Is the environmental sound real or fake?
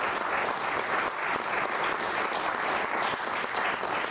real